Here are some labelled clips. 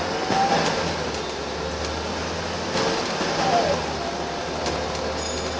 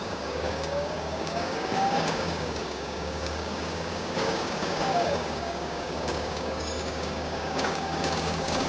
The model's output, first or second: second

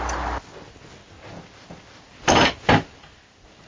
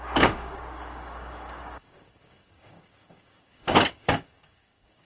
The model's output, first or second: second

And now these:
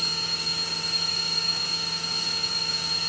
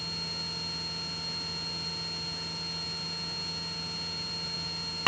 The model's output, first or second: first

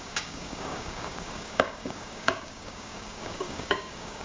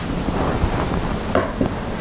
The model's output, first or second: first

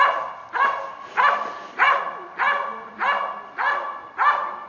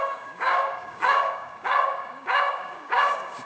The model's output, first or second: second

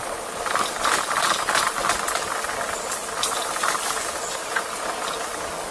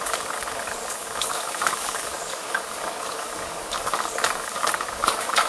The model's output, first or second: second